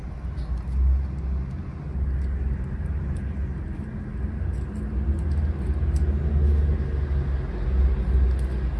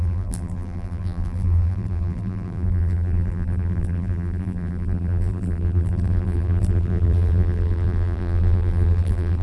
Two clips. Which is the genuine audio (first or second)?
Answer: first